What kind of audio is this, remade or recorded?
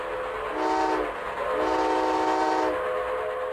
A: recorded